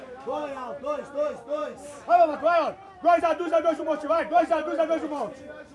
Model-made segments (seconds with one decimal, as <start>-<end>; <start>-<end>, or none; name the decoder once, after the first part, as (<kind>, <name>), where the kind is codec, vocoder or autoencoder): 0.0-0.4 (vocoder, BigVGAN v2); 1.1-1.6; 3.2-5.7